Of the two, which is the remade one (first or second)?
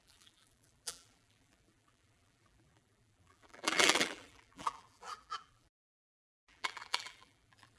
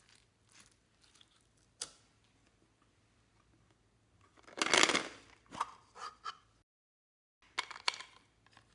first